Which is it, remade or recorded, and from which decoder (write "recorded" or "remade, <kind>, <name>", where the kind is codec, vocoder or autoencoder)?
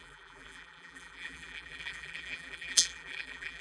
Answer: remade, vocoder, BigVGAN v2